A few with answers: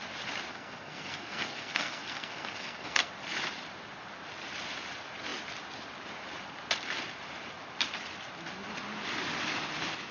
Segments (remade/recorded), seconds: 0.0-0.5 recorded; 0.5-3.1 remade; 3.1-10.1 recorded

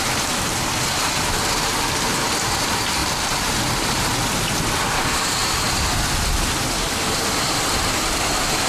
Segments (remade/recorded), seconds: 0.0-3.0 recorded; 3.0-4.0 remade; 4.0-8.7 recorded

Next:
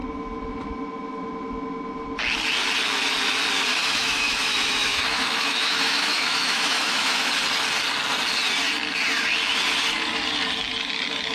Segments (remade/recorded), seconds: 0.0-3.7 recorded; 3.7-7.3 remade; 7.3-11.3 recorded